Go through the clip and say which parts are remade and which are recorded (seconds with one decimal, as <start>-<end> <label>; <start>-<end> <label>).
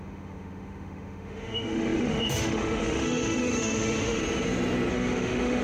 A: 0.0-4.2 remade; 4.2-4.9 recorded; 4.9-5.6 remade